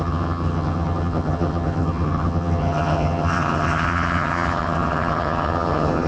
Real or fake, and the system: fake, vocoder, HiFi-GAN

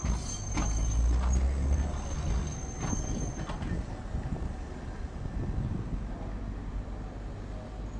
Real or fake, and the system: real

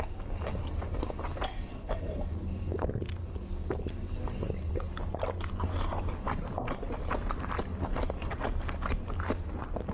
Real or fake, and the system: real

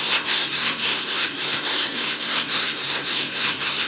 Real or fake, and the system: fake, codec, SNAC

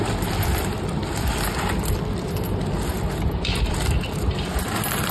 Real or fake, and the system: real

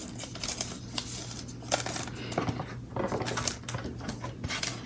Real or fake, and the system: real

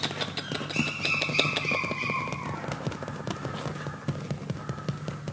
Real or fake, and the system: real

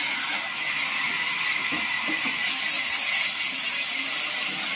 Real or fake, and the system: real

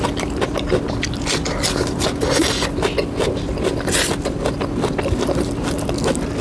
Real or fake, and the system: real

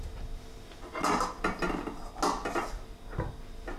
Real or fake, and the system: real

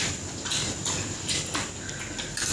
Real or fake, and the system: real